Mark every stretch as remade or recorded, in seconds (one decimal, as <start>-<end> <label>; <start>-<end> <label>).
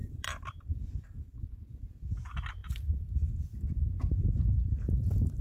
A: 0.0-2.1 remade; 2.1-2.6 recorded; 2.6-5.4 remade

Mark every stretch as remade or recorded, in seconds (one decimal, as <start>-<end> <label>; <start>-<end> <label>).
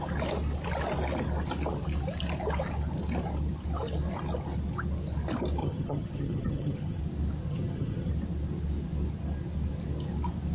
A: 0.0-5.6 recorded; 5.6-7.0 remade; 7.0-7.5 recorded; 7.5-8.1 remade; 8.1-10.5 recorded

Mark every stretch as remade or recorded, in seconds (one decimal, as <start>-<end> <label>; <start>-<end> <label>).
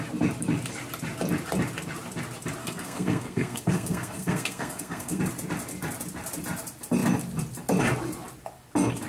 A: 0.0-2.6 recorded; 2.6-5.2 remade; 5.2-9.1 recorded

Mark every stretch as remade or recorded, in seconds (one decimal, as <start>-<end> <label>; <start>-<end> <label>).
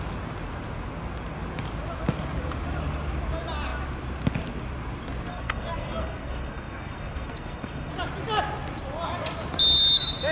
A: 0.0-5.3 recorded; 5.3-7.9 remade; 7.9-10.3 recorded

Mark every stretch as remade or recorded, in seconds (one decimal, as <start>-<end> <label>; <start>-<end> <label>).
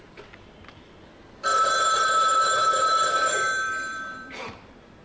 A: 0.0-1.5 recorded; 1.5-4.5 remade; 4.5-5.0 recorded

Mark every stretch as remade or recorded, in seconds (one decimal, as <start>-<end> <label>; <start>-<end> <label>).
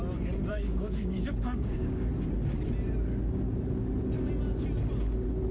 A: 0.0-0.5 recorded; 0.5-2.1 remade; 2.1-5.5 recorded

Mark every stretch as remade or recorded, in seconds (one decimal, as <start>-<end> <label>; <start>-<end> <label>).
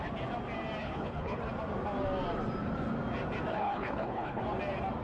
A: 0.0-0.8 recorded; 0.8-1.4 remade; 1.4-3.5 recorded; 3.5-4.4 remade; 4.4-5.0 recorded